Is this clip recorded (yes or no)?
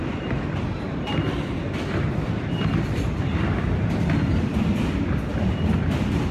yes